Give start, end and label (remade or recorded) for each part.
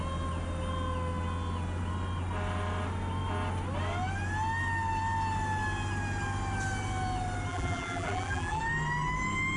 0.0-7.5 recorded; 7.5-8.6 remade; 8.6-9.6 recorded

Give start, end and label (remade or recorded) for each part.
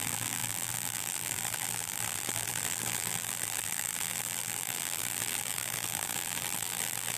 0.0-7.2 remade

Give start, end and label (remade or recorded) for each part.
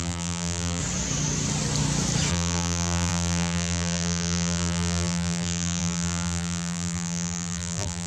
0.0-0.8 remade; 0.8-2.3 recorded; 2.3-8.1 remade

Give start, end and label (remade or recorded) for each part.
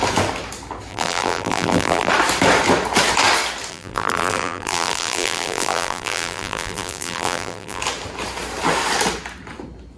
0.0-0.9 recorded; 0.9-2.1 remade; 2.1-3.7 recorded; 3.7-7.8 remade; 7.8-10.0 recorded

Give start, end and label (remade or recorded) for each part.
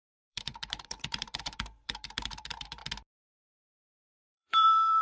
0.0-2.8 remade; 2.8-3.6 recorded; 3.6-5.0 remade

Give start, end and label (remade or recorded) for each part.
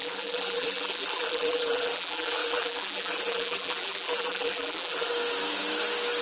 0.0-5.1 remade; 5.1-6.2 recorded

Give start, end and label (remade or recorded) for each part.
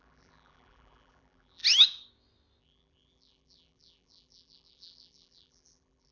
0.0-1.6 remade; 1.6-2.6 recorded; 2.6-6.1 remade